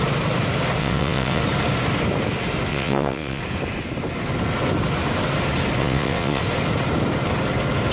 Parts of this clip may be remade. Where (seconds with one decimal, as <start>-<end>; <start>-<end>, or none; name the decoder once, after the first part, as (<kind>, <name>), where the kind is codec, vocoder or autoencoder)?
0.8-1.4 (vocoder, WaveNeXt); 2.7-3.4; 5.8-6.4